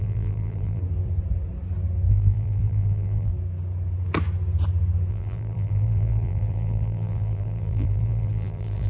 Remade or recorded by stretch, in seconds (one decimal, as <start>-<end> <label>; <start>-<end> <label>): 0.0-0.8 remade; 0.8-2.1 recorded; 2.1-3.3 remade; 3.3-5.1 recorded; 5.1-8.9 remade